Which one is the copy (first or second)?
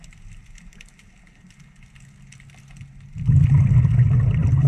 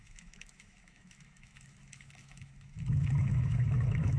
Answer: second